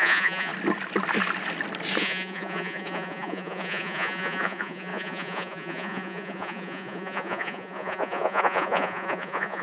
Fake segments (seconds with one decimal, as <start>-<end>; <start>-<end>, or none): 0.0-0.5; 2.0-9.6